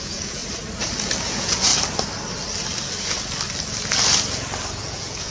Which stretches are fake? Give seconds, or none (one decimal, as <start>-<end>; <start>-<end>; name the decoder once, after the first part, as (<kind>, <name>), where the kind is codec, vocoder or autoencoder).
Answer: 0.0-0.4 (vocoder, Vocos); 1.2-1.7; 4.8-5.3